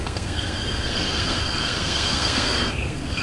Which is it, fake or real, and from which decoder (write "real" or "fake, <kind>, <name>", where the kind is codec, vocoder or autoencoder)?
fake, codec, SNAC